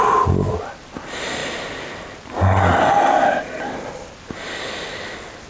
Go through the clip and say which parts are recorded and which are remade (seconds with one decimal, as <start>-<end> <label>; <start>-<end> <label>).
0.0-5.5 recorded